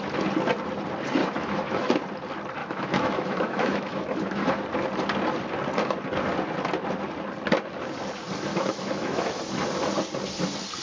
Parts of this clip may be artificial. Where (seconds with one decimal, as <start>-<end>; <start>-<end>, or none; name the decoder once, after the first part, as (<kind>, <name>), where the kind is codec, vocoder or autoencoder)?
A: 1.2-1.9 (autoencoder, DAC-VAE); 2.6-4.5; 8.5-9.4